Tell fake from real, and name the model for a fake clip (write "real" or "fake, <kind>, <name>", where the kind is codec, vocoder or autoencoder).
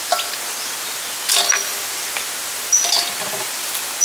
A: real